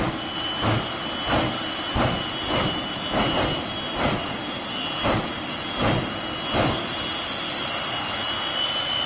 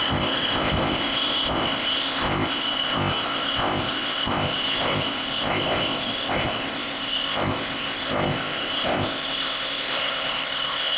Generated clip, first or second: second